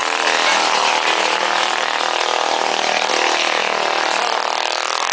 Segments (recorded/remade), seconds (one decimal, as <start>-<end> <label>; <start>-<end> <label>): 0.0-3.1 remade; 3.1-5.1 recorded